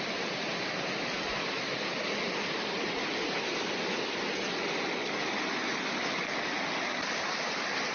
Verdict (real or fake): real